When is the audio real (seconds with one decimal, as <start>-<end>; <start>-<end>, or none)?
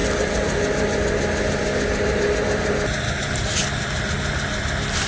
0.0-5.1